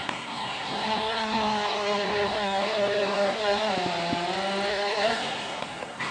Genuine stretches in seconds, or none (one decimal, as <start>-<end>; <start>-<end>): 3.7-4.7

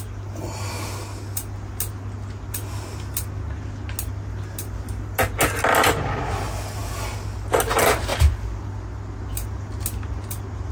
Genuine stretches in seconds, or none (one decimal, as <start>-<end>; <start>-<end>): 0.0-10.7

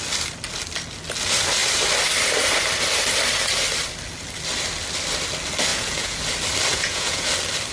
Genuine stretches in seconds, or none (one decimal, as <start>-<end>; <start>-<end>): 0.0-5.7; 6.2-6.7; 7.3-7.7

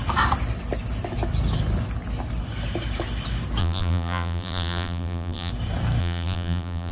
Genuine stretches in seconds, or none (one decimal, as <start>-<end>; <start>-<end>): 0.0-3.6; 5.5-6.0

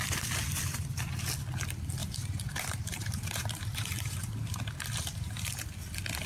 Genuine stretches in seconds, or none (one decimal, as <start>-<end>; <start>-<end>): 0.0-2.0; 5.5-6.3

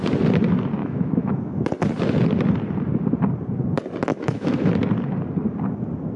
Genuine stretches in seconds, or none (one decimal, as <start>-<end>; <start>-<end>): 0.0-0.8; 1.6-4.1; 4.7-6.2

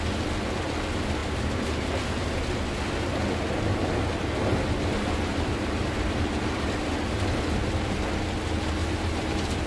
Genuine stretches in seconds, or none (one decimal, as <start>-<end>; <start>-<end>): 0.0-5.3; 6.9-8.8